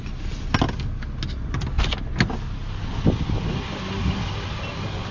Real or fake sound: real